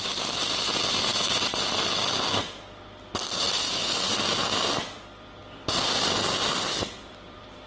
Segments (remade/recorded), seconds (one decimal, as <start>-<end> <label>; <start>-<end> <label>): 0.0-1.1 remade; 1.1-4.1 recorded; 4.1-5.4 remade; 5.4-7.1 recorded; 7.1-7.7 remade